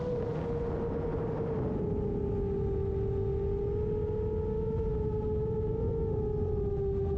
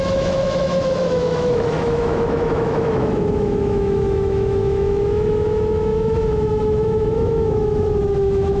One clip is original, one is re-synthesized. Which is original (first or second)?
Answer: first